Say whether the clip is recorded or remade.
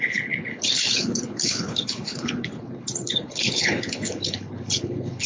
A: remade